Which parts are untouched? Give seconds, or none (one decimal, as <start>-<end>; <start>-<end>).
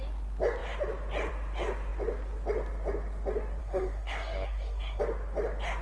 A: 0.0-3.6; 5.0-5.8